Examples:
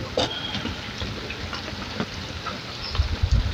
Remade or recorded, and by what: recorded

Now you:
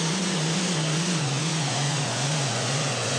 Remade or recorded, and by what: remade, vocoder, Vocos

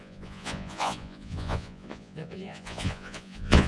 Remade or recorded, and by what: remade, vocoder, Vocos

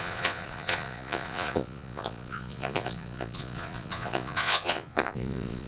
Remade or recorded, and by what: remade, vocoder, Vocos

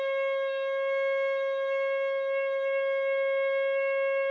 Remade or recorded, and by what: recorded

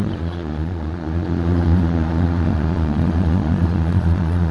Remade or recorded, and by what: remade, vocoder, Vocos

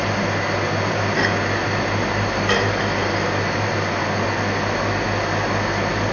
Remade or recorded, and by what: recorded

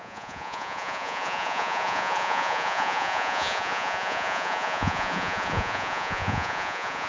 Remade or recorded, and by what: remade, vocoder, Vocos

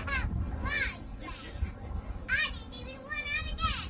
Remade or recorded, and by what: recorded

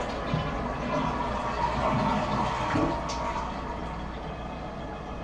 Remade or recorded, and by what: recorded